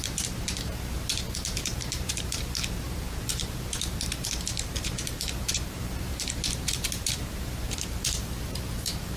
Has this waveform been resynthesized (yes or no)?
yes